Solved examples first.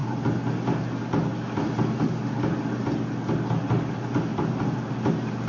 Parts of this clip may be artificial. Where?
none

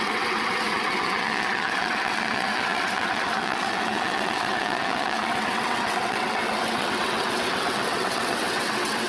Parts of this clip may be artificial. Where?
0.0-9.1

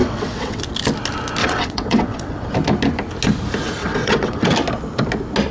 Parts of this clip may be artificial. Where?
0.0-0.6; 1.4-2.5; 3.8-4.5

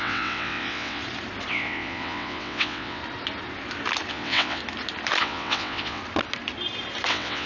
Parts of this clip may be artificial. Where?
0.0-1.0; 1.5-3.0; 4.1-4.6; 5.2-6.0; 7.1-7.5

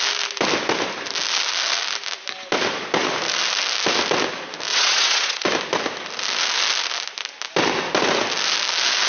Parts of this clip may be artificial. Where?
4.7-5.5

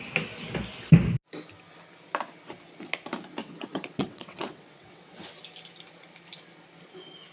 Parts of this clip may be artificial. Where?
3.4-5.2

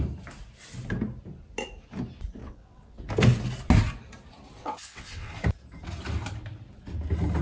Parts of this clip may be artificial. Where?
2.4-3.0; 4.6-5.3